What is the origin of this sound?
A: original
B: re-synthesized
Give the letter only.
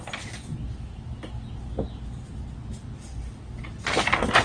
A